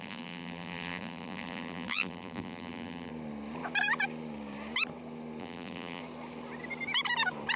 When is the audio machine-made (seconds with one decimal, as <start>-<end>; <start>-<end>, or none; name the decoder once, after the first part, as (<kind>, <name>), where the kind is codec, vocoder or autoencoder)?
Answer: 0.0-3.1 (vocoder, BigVGAN v2); 5.4-6.0